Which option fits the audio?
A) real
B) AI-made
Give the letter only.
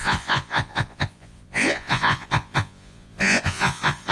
B